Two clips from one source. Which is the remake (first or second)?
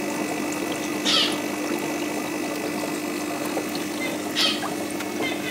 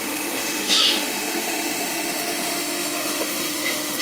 second